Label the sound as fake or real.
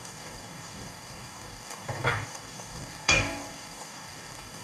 fake